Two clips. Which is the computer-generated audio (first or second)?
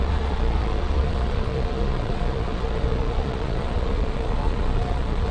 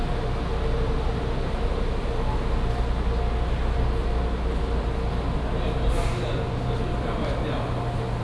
first